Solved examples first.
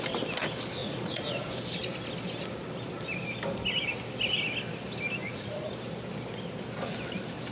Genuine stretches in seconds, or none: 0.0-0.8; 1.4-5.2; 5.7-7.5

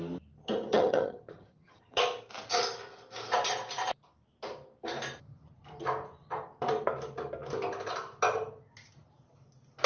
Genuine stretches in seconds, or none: 0.0-0.7; 2.0-9.9

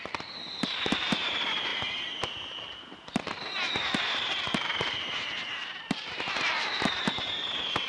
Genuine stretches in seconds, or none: none

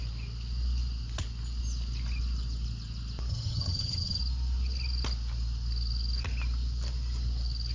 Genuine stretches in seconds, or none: 0.0-3.3; 4.2-7.7